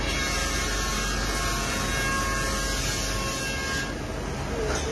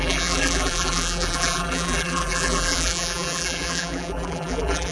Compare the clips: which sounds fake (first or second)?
second